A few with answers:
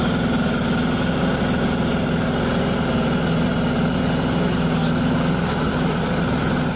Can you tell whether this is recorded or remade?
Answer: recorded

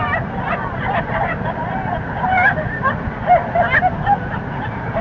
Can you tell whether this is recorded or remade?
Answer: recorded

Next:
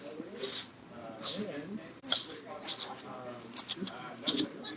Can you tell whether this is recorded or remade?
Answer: remade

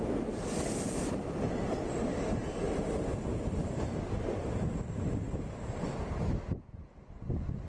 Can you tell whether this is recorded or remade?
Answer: recorded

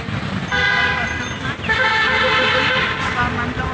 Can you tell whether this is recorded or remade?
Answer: recorded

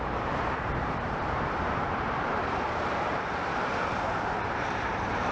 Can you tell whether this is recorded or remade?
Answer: remade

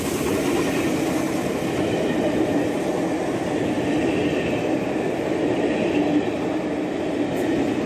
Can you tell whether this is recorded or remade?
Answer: recorded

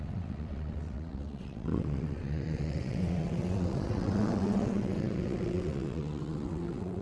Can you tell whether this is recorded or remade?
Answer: remade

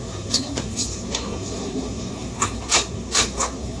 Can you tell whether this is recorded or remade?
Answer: remade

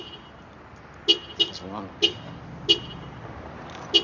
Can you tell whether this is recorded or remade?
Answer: recorded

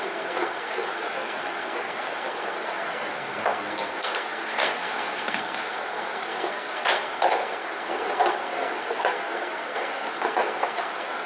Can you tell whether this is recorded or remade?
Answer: remade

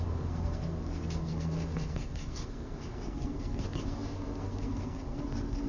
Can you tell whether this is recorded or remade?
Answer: remade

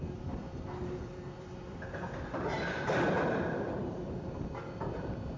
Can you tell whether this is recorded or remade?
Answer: remade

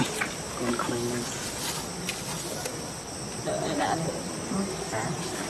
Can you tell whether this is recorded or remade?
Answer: recorded